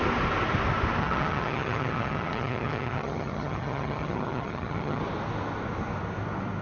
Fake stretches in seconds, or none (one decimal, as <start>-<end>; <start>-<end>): 1.0-5.0